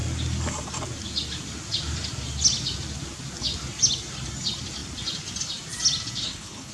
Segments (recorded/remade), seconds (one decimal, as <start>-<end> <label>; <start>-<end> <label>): 0.0-6.2 recorded; 6.2-6.7 remade

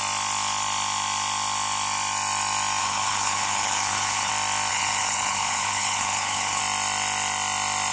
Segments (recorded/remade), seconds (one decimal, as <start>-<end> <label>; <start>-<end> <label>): 0.0-2.8 recorded; 2.8-4.3 remade; 4.3-4.7 recorded; 4.7-6.6 remade; 6.6-7.9 recorded

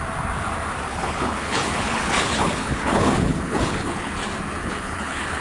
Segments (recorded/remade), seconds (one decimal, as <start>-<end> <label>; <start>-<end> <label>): 0.0-0.9 recorded; 0.9-4.1 remade; 4.1-4.6 recorded; 4.6-5.4 remade

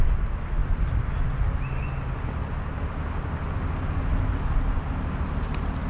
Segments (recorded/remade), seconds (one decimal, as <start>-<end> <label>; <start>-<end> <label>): 0.0-5.9 recorded

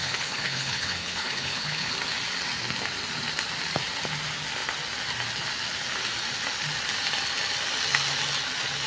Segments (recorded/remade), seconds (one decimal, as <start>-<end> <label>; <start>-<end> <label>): 0.0-1.9 remade; 1.9-8.9 recorded

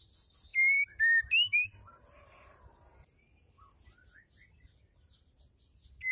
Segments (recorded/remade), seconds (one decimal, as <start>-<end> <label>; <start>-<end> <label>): 0.0-6.1 recorded

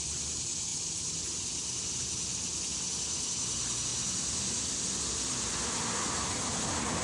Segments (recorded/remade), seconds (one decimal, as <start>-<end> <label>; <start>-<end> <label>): 0.0-7.0 recorded

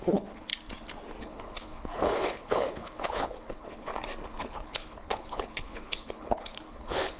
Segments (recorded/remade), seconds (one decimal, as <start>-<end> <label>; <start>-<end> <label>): 0.0-0.5 remade; 0.5-1.2 recorded; 1.2-3.9 remade; 3.9-4.4 recorded; 4.4-7.2 remade